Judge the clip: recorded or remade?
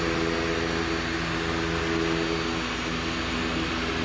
recorded